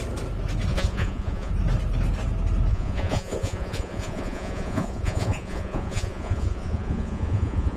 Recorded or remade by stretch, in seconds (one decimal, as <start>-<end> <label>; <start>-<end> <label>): 0.0-0.7 recorded; 0.7-1.5 remade; 1.5-2.7 recorded; 2.7-7.8 remade